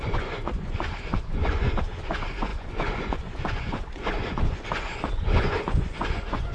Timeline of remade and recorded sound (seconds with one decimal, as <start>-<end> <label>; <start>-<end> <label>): 0.0-6.5 remade